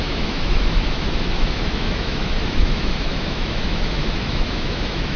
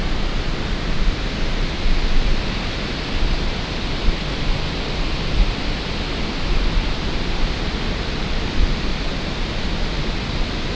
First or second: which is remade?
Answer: first